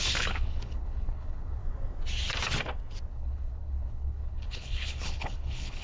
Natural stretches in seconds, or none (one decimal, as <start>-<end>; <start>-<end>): 1.6-3.1